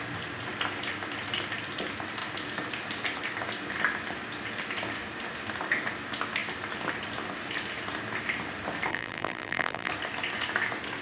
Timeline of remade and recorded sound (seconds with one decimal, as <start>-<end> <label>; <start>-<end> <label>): 0.0-8.9 recorded; 8.9-9.9 remade; 9.9-11.0 recorded